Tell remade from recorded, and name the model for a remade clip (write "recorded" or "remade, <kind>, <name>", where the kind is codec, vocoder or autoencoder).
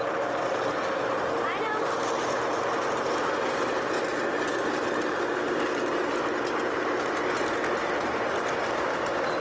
recorded